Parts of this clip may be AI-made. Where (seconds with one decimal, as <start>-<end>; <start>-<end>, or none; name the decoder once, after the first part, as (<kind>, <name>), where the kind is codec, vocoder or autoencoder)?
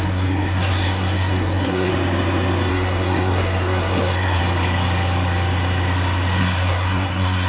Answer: 0.0-1.9 (codec, SNAC); 2.7-4.4; 6.4-7.5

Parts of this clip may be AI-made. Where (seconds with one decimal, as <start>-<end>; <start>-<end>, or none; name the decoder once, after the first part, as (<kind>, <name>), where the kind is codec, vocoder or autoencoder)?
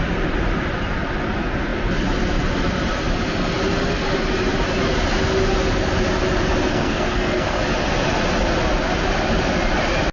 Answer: 6.7-7.6 (codec, SNAC)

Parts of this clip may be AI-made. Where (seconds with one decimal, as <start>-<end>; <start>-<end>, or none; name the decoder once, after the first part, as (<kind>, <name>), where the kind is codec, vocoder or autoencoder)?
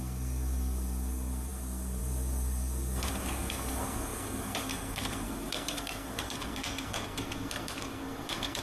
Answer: 0.0-8.6 (codec, SNAC)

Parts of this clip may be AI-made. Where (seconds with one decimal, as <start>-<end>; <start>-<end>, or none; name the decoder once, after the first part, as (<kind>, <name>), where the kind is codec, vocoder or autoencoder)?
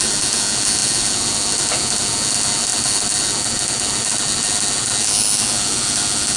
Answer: none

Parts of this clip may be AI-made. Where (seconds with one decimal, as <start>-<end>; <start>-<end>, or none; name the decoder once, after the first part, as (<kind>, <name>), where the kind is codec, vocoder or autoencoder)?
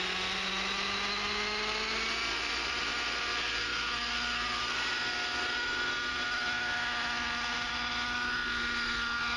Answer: none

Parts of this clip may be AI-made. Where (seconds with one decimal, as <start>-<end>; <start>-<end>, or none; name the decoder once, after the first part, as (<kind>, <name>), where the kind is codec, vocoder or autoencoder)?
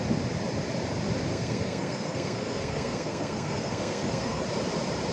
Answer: 1.3-4.4 (codec, SNAC)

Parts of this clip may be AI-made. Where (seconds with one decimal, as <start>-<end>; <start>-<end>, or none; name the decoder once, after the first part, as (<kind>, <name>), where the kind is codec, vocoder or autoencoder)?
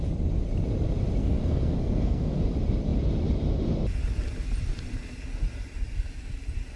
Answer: 1.2-2.4 (codec, SNAC)